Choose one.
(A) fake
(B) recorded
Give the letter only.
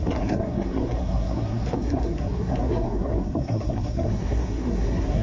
A